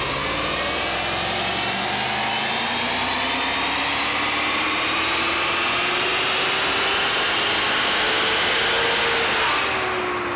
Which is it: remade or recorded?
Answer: recorded